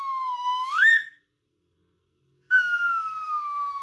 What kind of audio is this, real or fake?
fake